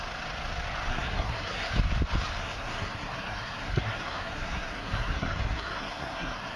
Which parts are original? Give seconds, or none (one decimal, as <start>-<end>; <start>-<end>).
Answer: 0.0-0.9; 1.7-2.4